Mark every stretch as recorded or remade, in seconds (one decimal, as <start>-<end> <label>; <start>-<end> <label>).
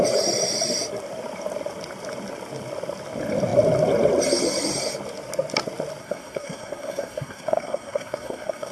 0.0-6.0 recorded; 6.0-8.7 remade